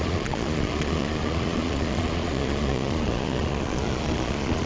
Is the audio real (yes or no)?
no